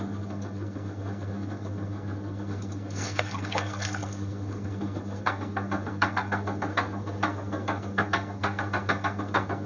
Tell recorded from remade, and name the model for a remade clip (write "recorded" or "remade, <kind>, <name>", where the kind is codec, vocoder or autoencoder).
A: remade, codec, SNAC